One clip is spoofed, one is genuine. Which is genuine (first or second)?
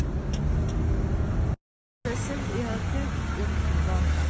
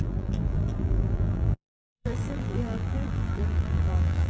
first